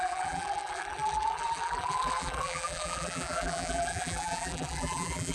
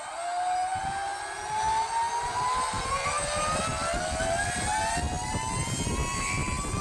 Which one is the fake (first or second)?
first